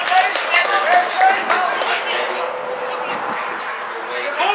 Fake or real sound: real